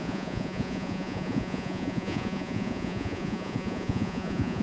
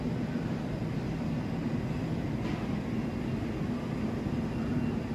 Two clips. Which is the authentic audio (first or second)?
second